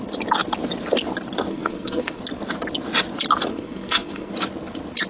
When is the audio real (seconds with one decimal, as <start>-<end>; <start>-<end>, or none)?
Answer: 0.0-1.5; 2.2-3.5; 4.3-5.1